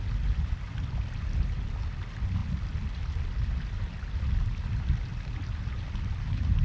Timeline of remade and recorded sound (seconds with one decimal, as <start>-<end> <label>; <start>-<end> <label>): 0.0-6.6 recorded